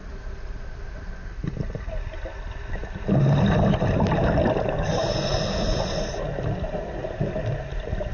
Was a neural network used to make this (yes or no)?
no